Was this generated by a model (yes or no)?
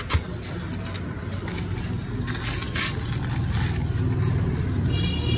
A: no